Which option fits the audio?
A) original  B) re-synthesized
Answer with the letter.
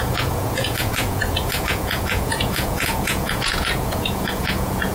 B